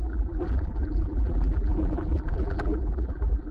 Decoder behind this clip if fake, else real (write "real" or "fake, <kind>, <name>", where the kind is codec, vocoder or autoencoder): fake, vocoder, BigVGAN v2